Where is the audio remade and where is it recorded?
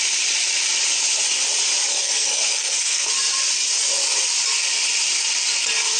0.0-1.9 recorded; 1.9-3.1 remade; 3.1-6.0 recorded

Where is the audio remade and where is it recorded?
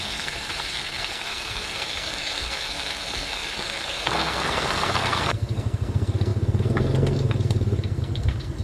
0.0-8.6 remade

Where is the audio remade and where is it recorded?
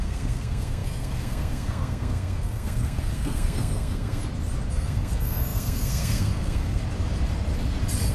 0.0-4.2 remade; 4.2-4.7 recorded; 4.7-6.8 remade; 6.8-8.1 recorded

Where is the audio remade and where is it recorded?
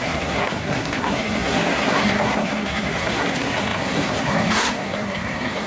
0.0-5.7 remade